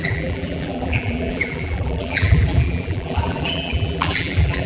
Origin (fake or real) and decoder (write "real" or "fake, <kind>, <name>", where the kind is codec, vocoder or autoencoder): fake, vocoder, BigVGAN v2